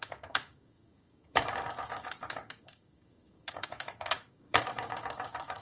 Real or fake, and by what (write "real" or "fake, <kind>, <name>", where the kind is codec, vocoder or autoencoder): fake, codec, DAC